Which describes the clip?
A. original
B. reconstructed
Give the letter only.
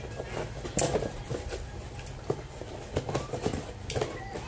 A